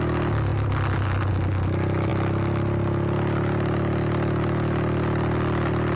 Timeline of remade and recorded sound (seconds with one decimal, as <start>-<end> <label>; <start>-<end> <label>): 0.0-6.0 recorded